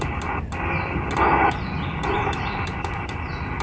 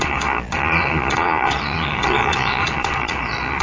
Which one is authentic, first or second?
first